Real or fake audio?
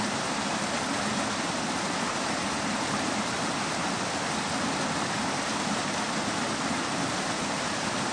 real